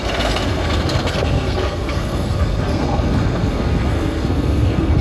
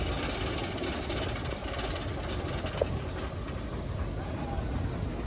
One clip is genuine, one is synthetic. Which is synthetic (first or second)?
first